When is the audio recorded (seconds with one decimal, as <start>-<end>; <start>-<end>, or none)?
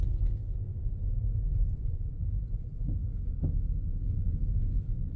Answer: 0.0-0.7; 2.6-5.2